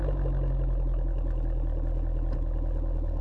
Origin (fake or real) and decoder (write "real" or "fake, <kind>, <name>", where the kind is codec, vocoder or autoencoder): real